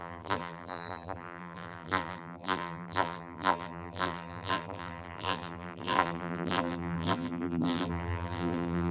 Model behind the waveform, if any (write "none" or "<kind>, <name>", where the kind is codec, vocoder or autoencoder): vocoder, BigVGAN v2